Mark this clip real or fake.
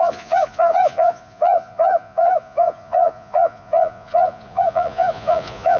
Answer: fake